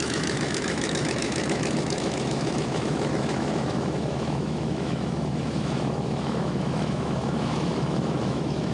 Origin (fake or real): fake